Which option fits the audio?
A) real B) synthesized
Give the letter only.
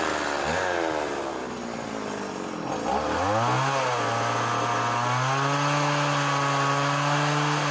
A